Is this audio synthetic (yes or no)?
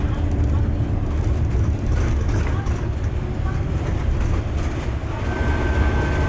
no